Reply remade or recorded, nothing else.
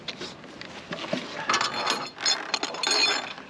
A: recorded